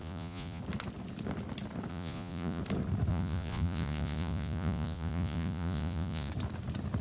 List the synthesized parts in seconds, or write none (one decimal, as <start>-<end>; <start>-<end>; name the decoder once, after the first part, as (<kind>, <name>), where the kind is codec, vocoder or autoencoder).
0.0-0.6 (vocoder, Vocos); 1.9-2.6; 3.1-6.3